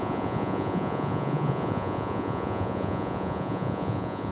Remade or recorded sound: remade